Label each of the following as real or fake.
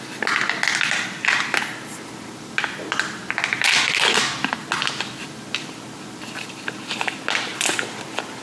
real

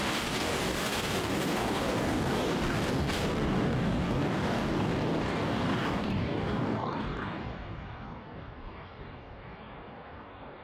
fake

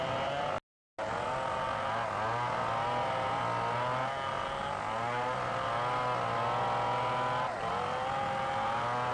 real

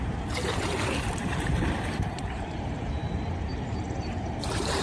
fake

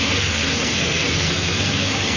fake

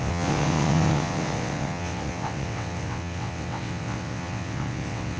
fake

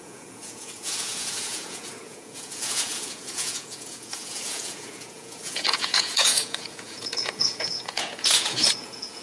fake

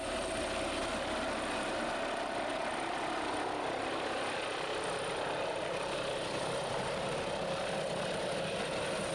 real